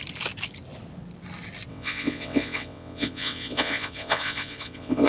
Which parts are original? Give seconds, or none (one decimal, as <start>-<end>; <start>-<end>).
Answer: 0.0-1.7